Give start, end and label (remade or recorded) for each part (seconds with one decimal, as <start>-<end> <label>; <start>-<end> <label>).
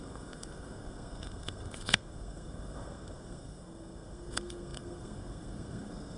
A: 0.0-6.2 remade